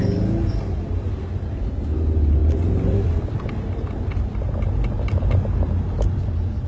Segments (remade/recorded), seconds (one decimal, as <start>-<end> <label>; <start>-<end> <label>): 0.0-2.4 recorded; 2.4-4.7 remade; 4.7-6.7 recorded